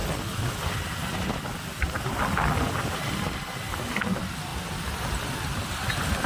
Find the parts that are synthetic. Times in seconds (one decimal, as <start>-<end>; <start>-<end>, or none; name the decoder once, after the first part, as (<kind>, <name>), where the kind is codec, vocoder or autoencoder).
none